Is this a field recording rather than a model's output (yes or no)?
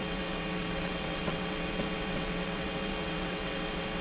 no